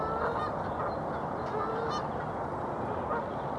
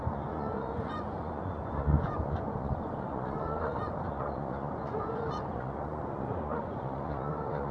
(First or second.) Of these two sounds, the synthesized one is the second